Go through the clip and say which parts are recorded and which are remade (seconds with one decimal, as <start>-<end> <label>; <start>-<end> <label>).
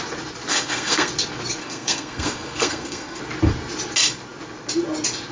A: 0.0-0.5 recorded; 0.5-1.1 remade; 1.1-1.6 recorded; 1.6-3.2 remade; 3.2-5.3 recorded